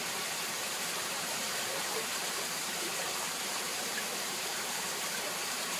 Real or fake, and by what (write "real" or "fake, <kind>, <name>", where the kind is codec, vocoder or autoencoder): fake, vocoder, BigVGAN v2